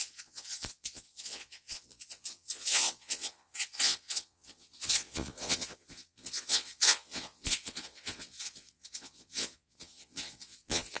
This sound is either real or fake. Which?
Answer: fake